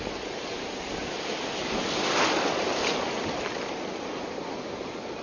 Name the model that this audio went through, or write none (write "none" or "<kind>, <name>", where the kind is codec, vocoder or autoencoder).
none